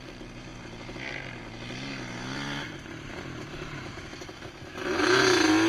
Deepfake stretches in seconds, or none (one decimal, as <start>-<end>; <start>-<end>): none